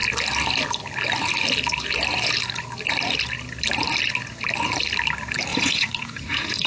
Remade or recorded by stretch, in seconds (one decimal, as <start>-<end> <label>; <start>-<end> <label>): 0.0-5.5 recorded; 5.5-6.7 remade